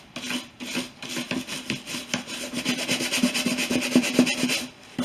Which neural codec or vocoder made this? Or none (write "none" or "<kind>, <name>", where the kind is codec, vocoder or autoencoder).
none